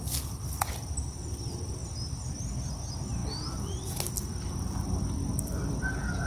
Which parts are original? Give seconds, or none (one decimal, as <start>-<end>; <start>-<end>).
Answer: 1.8-2.4